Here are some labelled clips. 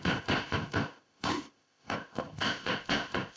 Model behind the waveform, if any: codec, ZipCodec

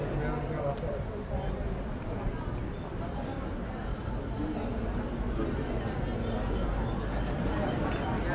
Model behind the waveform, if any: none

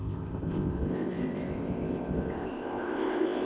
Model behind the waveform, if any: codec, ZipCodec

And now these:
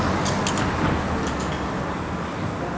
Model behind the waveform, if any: none